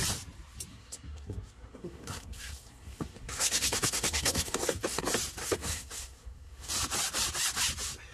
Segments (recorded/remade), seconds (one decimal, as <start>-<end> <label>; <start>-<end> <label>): 0.0-0.7 recorded; 0.7-5.0 remade; 5.0-5.4 recorded; 5.4-6.7 remade; 6.7-8.1 recorded